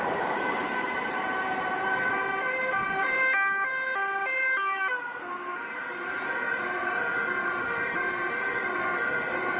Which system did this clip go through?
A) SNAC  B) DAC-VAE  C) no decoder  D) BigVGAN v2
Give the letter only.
D